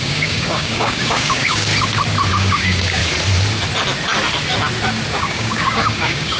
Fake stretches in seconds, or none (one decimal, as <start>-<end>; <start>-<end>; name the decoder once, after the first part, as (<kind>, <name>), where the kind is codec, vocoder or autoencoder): 0.0-1.7 (codec, DAC); 2.3-3.0; 5.1-6.4